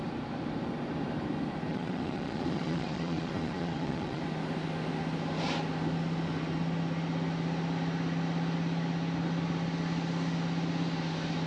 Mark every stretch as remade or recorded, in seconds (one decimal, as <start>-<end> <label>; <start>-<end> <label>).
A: 0.0-1.7 recorded; 1.7-4.2 remade; 4.2-11.5 recorded